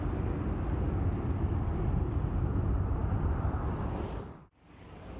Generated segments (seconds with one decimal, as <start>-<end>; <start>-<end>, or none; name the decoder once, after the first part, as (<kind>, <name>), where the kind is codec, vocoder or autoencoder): none